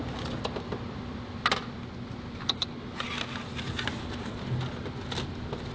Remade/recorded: recorded